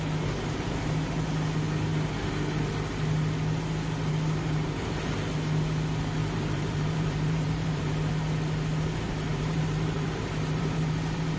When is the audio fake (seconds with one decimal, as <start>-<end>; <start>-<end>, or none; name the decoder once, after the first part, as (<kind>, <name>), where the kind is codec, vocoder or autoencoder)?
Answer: 6.2-8.1 (vocoder, BigVGAN v2); 9.3-11.4